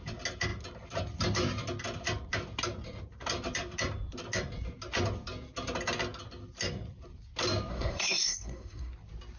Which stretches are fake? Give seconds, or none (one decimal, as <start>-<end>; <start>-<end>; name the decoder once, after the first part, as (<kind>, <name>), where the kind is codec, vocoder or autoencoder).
7.7-8.9 (codec, SNAC)